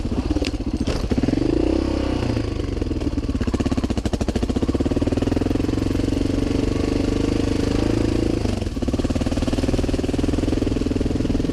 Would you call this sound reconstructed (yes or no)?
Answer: no